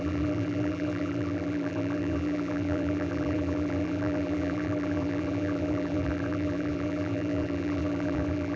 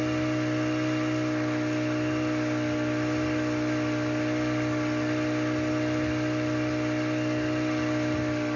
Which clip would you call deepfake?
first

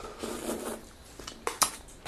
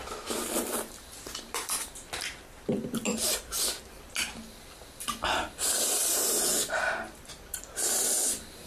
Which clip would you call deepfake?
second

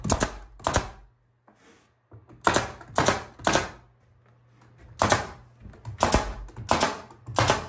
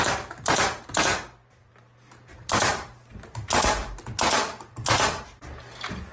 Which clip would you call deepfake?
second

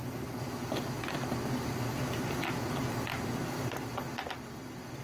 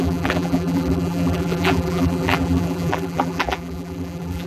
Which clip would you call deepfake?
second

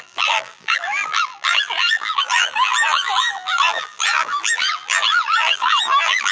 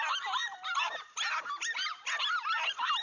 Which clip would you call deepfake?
first